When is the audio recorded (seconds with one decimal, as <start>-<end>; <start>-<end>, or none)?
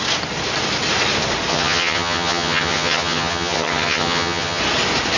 0.0-1.5; 4.6-5.2